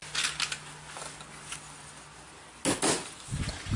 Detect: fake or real real